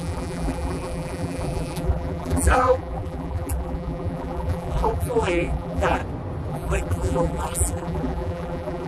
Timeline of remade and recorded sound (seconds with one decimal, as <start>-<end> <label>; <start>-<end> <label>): 0.0-6.0 remade; 6.0-6.5 recorded; 6.5-8.9 remade